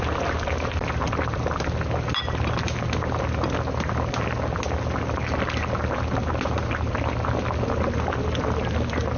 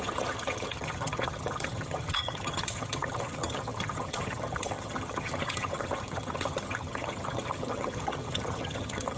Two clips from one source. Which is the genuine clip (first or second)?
first